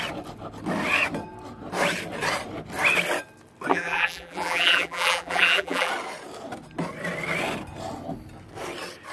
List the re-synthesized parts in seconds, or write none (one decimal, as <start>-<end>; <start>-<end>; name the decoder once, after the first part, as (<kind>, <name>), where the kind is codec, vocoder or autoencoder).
3.7-5.9 (vocoder, BigVGAN v2)